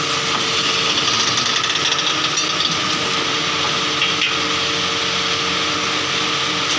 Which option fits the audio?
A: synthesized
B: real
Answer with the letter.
B